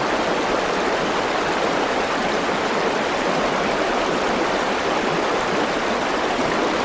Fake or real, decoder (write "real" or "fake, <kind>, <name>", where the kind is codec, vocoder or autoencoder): real